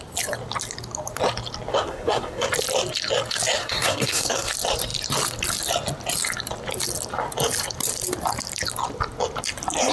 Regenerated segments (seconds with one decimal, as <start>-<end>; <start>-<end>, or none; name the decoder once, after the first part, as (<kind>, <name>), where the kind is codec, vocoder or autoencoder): 1.7-2.5 (codec, SNAC); 3.6-4.5